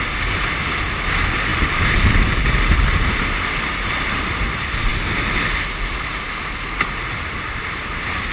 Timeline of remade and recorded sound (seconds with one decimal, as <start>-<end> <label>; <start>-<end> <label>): 0.0-1.5 recorded; 1.5-2.4 remade; 2.4-8.3 recorded